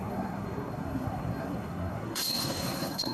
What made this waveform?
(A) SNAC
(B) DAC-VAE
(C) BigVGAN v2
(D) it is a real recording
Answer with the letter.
A